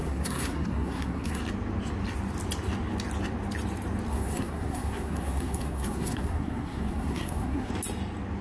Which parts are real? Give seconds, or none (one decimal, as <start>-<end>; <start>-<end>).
1.4-4.1; 7.7-8.4

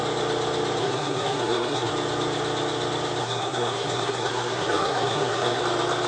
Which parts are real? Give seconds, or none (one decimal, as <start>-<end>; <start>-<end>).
0.0-0.8; 1.9-3.2; 5.6-6.1